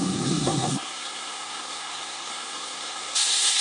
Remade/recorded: remade